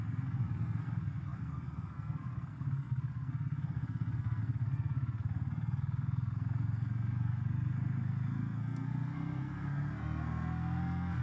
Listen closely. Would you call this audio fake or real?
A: fake